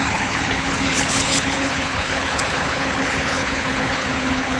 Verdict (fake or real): fake